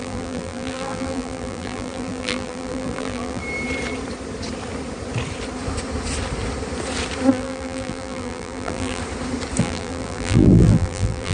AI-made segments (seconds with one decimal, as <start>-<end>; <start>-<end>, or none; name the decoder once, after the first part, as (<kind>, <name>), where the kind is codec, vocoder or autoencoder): 0.0-3.4 (vocoder, BigVGAN v2); 7.3-9.0; 9.6-11.3